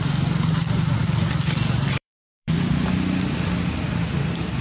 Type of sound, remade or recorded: remade